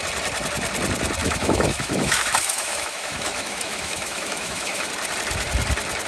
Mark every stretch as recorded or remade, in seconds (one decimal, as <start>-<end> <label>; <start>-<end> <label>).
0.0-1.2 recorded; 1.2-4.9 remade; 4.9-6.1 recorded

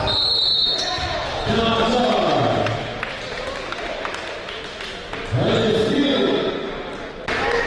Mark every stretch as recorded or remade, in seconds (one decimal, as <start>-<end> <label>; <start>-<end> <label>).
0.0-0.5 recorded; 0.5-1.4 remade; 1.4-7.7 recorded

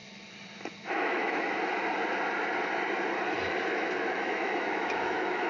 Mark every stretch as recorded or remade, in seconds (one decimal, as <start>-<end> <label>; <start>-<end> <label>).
0.0-0.8 recorded; 0.8-1.5 remade; 1.5-3.7 recorded; 3.7-5.5 remade

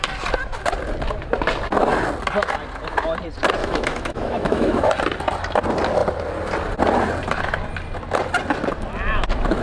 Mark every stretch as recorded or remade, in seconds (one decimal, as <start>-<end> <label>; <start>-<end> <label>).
0.0-3.6 recorded; 3.6-4.9 remade; 4.9-9.6 recorded

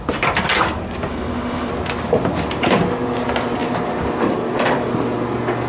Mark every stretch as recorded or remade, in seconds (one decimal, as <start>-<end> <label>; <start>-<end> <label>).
0.0-1.1 recorded; 1.1-1.7 remade; 1.7-5.7 recorded

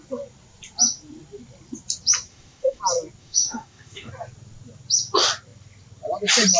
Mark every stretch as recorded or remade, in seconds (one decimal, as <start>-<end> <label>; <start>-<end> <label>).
0.0-2.3 recorded; 2.3-2.8 remade; 2.8-3.2 recorded; 3.2-4.1 remade; 4.1-6.6 recorded

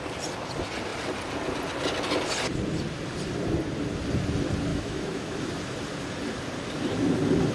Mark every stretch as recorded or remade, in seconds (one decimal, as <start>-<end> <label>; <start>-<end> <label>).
0.0-4.7 recorded; 4.7-5.3 remade; 5.3-7.5 recorded